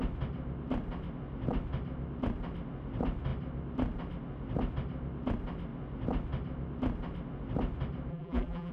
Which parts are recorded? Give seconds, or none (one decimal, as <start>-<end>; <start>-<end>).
0.0-8.1